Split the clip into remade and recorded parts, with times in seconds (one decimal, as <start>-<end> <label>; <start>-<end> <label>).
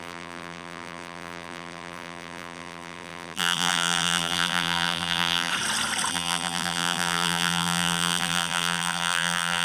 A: 0.0-5.5 remade; 5.5-6.1 recorded; 6.1-9.6 remade